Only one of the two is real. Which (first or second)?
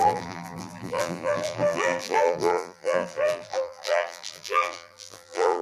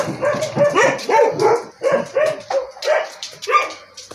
second